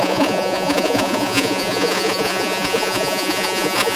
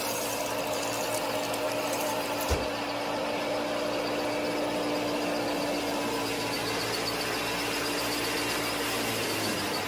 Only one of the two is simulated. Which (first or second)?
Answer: first